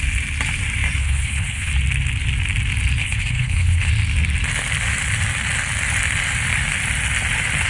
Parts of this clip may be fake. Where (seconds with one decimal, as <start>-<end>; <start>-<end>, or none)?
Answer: 1.0-1.7; 3.0-3.9